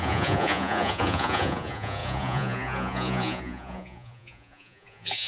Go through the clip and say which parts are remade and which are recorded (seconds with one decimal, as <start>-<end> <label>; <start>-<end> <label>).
0.0-5.3 remade